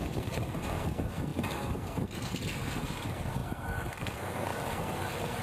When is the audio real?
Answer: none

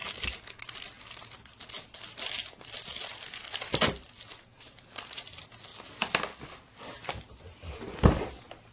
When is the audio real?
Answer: 0.0-8.7

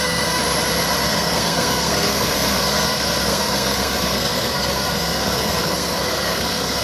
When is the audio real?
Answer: 0.4-1.1